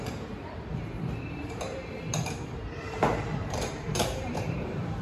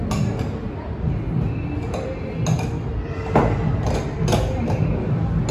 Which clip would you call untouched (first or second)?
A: second